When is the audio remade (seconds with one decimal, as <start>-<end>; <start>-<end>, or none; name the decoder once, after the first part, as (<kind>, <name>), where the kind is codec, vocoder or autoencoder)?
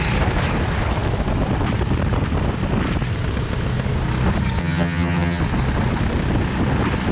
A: 4.6-5.4 (vocoder, HiFi-GAN)